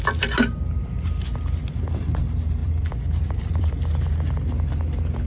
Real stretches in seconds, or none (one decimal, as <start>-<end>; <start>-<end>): 0.0-2.6; 3.7-5.3